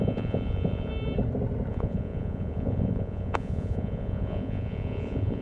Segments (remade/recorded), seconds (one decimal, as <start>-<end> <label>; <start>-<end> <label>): 0.0-0.9 remade; 0.9-1.7 recorded; 1.7-5.4 remade